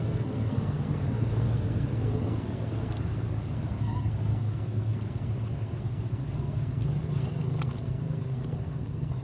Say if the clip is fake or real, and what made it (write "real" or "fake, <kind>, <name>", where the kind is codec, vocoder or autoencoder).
fake, codec, SNAC